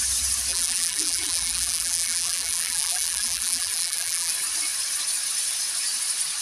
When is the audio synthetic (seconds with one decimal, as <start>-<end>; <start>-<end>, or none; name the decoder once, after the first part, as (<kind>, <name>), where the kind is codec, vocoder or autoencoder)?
0.5-4.3 (vocoder, BigVGAN v2)